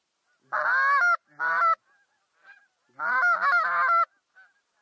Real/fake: real